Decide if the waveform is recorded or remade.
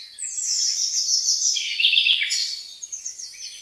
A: remade